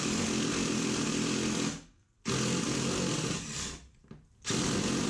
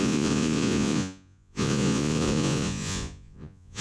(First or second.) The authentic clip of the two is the first